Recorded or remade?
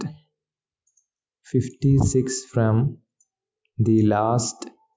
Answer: recorded